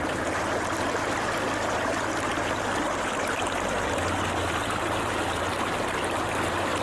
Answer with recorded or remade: recorded